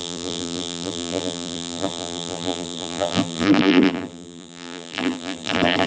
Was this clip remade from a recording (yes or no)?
yes